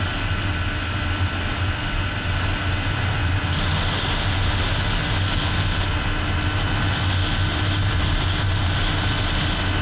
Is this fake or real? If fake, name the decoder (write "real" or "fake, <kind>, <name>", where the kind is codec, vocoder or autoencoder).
real